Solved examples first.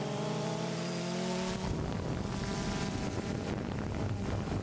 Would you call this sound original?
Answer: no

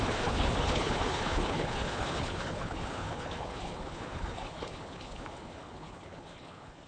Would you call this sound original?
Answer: no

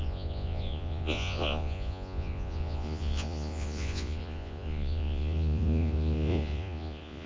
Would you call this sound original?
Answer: no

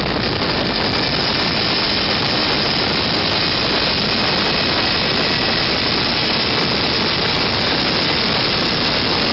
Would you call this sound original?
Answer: yes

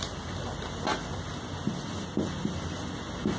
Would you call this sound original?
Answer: yes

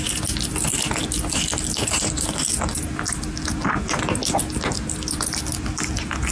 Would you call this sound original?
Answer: yes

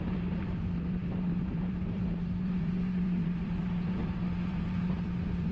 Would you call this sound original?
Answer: no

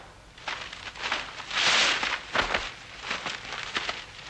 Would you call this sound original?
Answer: yes